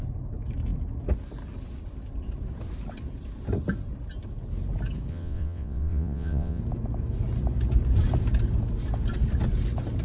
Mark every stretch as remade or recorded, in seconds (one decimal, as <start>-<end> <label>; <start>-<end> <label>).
0.0-5.1 recorded; 5.1-6.6 remade; 6.6-10.0 recorded